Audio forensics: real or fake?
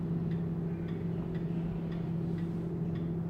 real